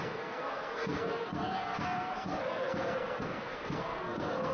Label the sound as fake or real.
fake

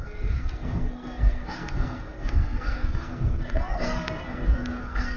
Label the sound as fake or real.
fake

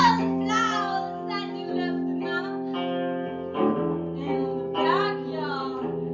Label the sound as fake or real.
real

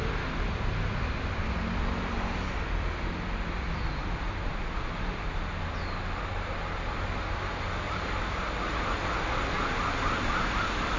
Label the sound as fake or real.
real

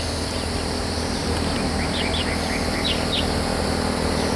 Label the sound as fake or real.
real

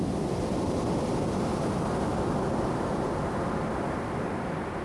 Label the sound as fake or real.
real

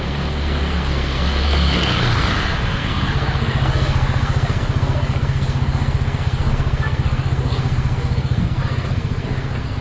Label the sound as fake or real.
fake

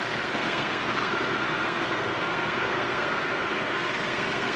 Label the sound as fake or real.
fake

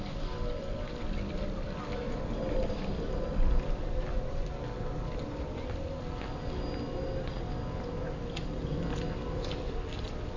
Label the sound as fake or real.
real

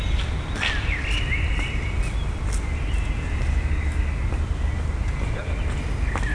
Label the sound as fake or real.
real